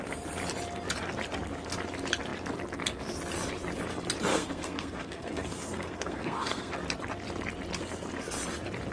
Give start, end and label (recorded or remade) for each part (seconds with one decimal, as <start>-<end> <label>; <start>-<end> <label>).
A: 0.0-4.3 recorded; 4.3-6.7 remade; 6.7-8.9 recorded